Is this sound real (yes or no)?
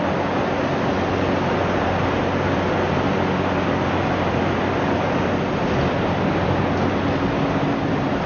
yes